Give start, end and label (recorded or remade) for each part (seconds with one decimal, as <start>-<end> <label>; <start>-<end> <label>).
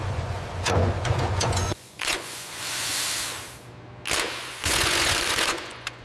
0.0-2.9 remade; 2.9-4.4 recorded; 4.4-6.0 remade